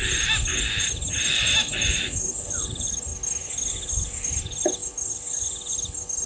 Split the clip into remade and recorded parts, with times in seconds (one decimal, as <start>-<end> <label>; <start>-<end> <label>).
0.0-0.9 recorded; 0.9-3.1 remade; 3.1-3.7 recorded; 3.7-4.8 remade; 4.8-6.3 recorded